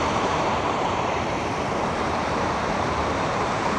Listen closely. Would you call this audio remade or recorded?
remade